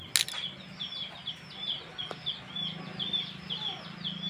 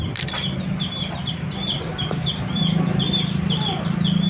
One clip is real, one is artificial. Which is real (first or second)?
first